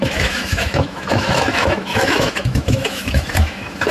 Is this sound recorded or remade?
remade